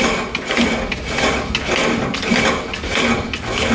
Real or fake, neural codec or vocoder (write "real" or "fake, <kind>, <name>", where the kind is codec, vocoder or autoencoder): real